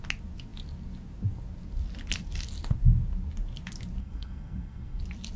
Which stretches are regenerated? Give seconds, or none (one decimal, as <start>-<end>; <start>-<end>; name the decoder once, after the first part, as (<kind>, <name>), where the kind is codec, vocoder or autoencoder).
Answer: 4.0-5.0 (codec, SNAC)